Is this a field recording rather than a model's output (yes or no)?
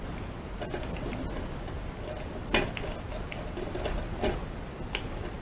yes